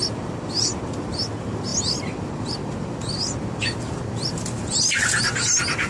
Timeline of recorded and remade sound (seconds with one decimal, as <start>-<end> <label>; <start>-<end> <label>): 0.0-5.9 recorded